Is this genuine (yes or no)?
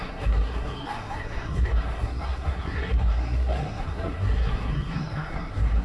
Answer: no